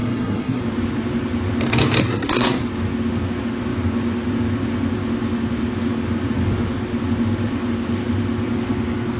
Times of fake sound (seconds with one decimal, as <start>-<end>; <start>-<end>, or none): 0.0-0.6; 2.0-2.6